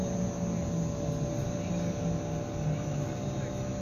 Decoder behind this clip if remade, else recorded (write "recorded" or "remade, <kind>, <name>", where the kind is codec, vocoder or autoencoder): recorded